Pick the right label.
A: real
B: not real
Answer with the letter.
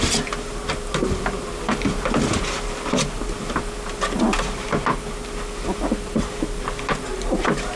A